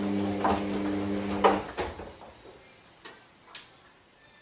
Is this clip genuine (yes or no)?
yes